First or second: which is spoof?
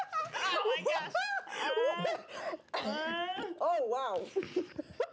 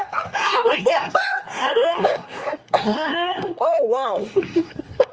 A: second